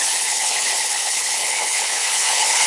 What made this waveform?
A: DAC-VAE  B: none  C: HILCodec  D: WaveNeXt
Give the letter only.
C